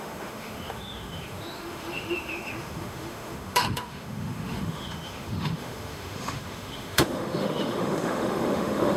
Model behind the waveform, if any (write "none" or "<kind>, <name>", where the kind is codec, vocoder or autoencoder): autoencoder, DAC-VAE